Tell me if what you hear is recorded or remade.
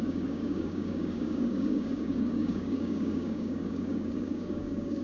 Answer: remade